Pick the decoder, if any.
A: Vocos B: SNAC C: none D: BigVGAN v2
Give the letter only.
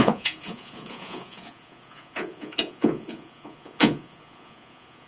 A